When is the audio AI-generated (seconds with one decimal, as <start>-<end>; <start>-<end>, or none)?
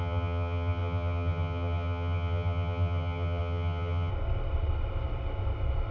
0.0-4.1